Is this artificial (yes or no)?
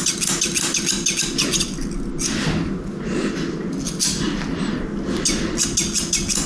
no